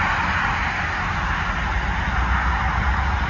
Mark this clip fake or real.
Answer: real